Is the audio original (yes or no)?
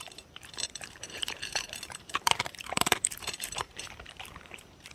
no